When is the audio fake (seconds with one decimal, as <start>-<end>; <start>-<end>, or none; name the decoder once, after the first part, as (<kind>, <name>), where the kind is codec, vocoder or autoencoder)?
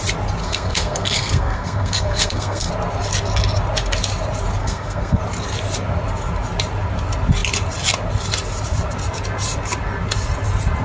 0.4-2.7 (codec, SNAC); 4.6-5.2